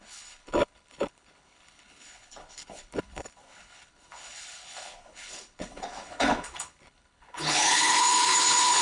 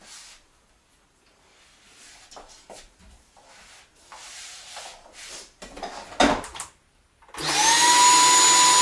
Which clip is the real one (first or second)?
second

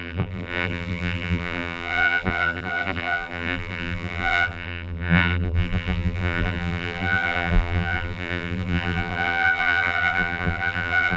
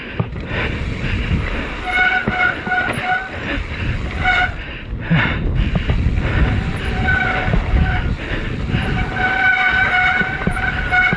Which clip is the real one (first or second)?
second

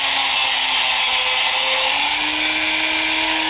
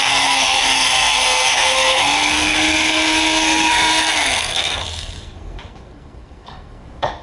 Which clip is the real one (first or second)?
first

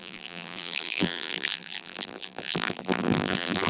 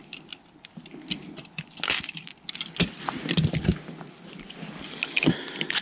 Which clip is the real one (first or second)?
second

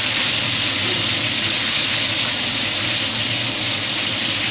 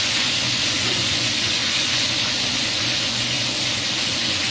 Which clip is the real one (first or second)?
first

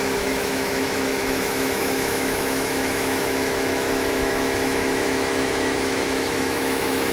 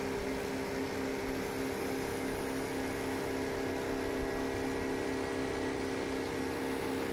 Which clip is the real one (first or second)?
second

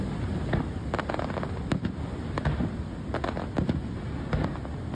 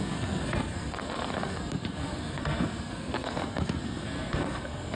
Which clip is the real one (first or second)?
first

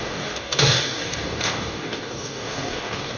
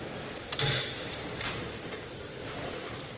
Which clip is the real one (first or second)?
second